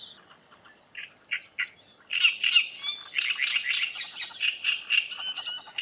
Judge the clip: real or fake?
real